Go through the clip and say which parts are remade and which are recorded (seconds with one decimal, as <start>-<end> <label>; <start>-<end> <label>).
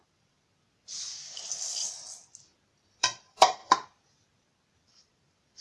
0.0-1.2 remade; 1.2-3.0 recorded; 3.0-3.6 remade; 3.6-4.8 recorded; 4.8-5.6 remade